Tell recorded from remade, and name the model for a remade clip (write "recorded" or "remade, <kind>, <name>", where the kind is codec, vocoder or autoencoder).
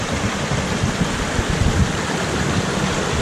remade, vocoder, BigVGAN v2